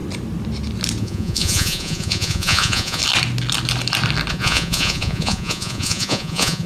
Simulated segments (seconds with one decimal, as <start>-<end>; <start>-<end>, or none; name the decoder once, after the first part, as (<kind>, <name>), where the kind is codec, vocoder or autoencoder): 1.0-3.0 (vocoder, Vocos); 4.3-6.7